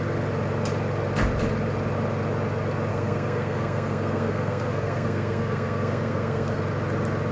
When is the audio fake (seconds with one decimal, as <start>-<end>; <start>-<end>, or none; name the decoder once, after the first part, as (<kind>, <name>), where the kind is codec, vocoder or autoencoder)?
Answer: 2.9-6.6 (codec, SNAC)